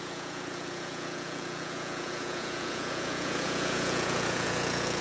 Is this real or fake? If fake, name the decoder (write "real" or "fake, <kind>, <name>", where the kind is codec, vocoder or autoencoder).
fake, vocoder, Vocos